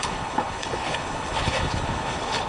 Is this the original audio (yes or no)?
no